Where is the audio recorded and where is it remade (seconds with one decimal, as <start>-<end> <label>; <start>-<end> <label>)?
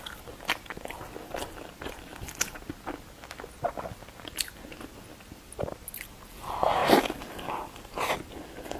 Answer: 0.0-8.8 recorded